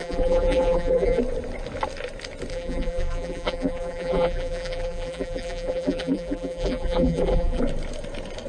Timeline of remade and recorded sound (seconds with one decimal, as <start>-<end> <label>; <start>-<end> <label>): 0.0-1.2 remade; 1.2-2.5 recorded; 2.5-7.6 remade; 7.6-8.5 recorded